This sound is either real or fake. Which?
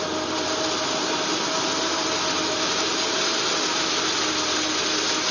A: real